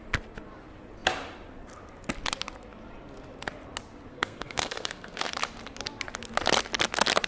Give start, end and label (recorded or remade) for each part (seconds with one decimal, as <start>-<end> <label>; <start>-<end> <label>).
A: 0.0-4.1 recorded; 4.1-5.3 remade; 5.3-7.3 recorded

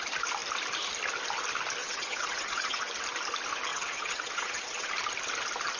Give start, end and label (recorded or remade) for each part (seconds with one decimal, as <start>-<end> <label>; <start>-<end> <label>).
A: 0.0-1.8 recorded; 1.8-2.8 remade; 2.8-3.7 recorded; 3.7-4.9 remade; 4.9-5.8 recorded

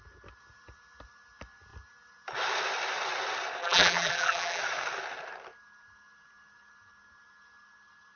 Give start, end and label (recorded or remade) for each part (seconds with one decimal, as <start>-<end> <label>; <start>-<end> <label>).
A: 0.0-3.6 recorded; 3.6-4.6 remade; 4.6-8.2 recorded

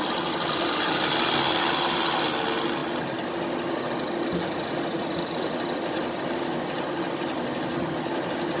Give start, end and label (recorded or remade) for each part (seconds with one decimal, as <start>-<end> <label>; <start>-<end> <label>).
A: 0.0-4.3 recorded; 4.3-5.6 remade; 5.6-8.6 recorded

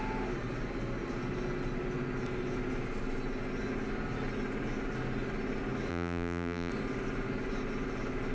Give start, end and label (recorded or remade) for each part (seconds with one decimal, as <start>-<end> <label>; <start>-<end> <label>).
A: 0.0-5.9 recorded; 5.9-6.7 remade; 6.7-8.3 recorded